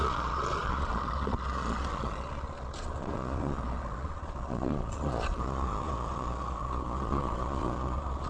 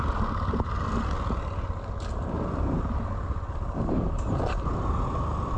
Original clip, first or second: second